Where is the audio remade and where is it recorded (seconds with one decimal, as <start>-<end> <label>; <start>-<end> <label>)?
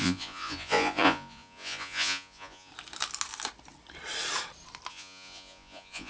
0.0-2.7 remade; 2.7-4.9 recorded; 4.9-6.1 remade